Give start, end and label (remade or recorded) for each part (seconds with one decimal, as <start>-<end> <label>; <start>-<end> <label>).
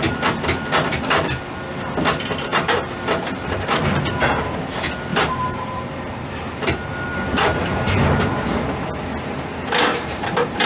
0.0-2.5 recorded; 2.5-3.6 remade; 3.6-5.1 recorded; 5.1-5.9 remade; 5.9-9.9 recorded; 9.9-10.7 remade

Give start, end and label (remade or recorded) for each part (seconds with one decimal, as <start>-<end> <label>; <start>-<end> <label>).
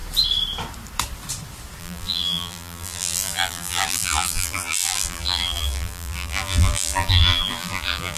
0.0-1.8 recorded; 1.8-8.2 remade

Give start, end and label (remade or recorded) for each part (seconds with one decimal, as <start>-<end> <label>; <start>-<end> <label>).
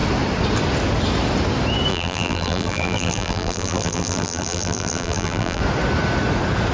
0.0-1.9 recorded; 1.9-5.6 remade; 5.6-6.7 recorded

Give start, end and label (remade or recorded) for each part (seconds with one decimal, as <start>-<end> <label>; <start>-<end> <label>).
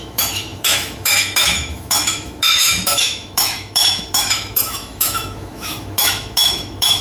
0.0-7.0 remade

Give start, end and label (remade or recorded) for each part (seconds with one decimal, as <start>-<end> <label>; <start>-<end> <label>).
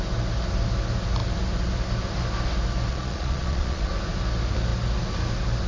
0.0-2.9 recorded; 2.9-3.9 remade; 3.9-5.7 recorded